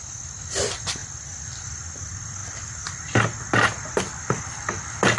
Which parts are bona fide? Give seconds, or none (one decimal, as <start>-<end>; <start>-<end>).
0.0-5.2